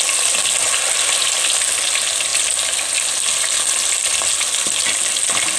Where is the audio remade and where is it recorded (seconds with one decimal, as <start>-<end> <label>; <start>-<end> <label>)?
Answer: 0.0-5.6 recorded